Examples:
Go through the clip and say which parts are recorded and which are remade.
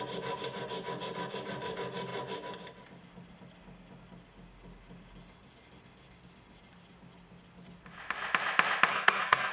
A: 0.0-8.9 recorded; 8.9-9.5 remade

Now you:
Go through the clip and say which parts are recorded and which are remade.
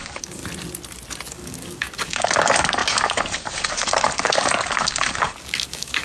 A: 0.0-0.4 remade; 0.4-1.3 recorded; 1.3-6.0 remade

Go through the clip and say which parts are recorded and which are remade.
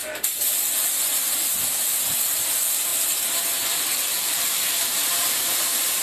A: 0.0-1.8 recorded; 1.8-2.9 remade; 2.9-3.7 recorded; 3.7-6.0 remade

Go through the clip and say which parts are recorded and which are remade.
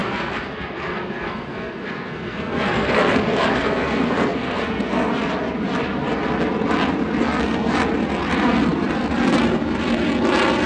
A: 0.0-5.1 remade; 5.1-7.2 recorded; 7.2-7.7 remade; 7.7-10.7 recorded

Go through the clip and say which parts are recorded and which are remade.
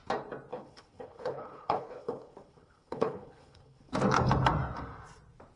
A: 0.0-0.5 recorded; 0.5-3.9 remade; 3.9-5.6 recorded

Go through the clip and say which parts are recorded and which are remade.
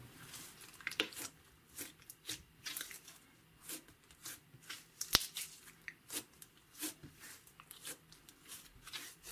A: 0.0-1.0 recorded; 1.0-4.2 remade; 4.2-6.8 recorded; 6.8-9.3 remade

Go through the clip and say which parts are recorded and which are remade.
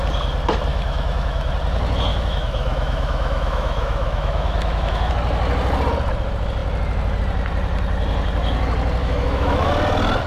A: 0.0-0.7 recorded; 0.7-1.5 remade; 1.5-2.1 recorded; 2.1-5.1 remade; 5.1-9.0 recorded; 9.0-9.7 remade; 9.7-10.3 recorded